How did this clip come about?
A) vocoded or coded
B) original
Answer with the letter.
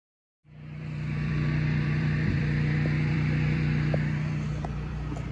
A